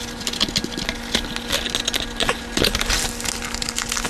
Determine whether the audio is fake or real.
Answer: real